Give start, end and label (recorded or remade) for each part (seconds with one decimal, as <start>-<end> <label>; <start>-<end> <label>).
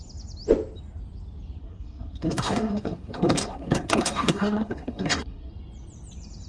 0.0-1.6 recorded; 1.6-5.5 remade; 5.5-6.5 recorded